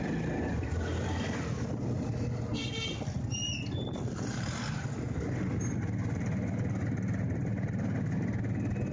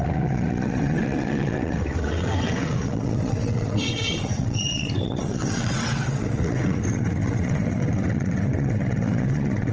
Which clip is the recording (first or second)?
first